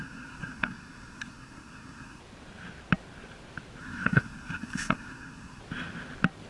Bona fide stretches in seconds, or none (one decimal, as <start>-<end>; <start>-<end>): 2.2-3.8; 5.6-6.5